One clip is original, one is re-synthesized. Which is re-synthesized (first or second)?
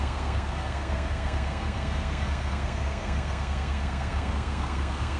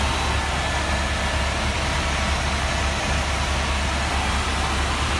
first